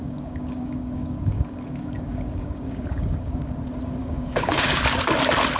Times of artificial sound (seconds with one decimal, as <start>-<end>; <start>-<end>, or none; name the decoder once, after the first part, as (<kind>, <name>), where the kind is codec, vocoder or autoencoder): 0.0-3.4 (codec, DAC); 4.0-4.8